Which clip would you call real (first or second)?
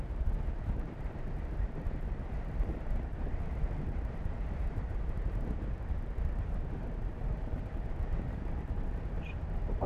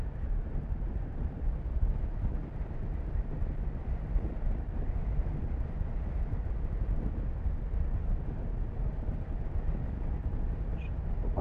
second